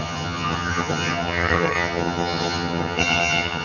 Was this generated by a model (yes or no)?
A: yes